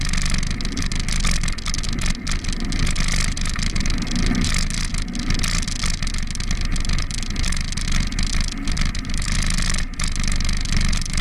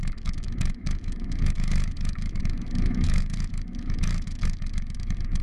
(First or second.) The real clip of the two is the first